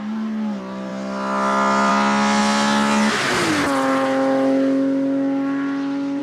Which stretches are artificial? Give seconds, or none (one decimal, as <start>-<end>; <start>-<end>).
none